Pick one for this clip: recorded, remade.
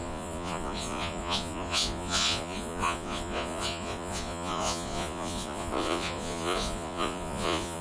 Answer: remade